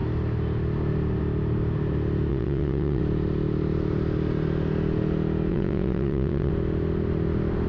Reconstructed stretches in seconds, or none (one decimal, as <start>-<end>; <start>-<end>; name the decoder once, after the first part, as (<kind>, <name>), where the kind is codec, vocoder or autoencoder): 2.3-3.0 (vocoder, WaveNeXt); 5.5-6.5